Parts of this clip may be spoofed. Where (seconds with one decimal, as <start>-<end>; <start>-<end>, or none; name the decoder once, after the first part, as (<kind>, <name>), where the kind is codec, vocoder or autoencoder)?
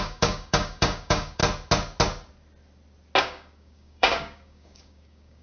0.0-1.4 (codec, DAC); 3.2-5.4